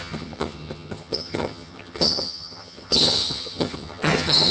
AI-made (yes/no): yes